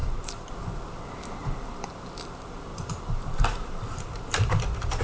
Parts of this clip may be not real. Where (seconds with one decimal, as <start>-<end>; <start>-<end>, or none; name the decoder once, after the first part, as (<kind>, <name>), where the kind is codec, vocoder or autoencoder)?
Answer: 0.0-0.5 (vocoder, BigVGAN v2); 1.4-1.9; 2.7-5.0